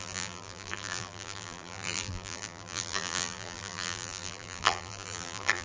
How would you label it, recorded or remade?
remade